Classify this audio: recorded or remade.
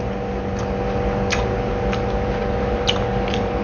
recorded